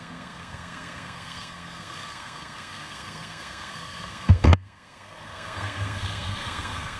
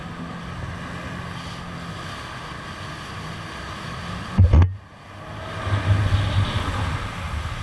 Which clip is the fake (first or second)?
first